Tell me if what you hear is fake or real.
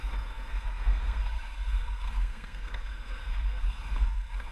fake